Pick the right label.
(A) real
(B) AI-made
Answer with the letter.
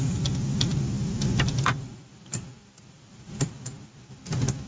A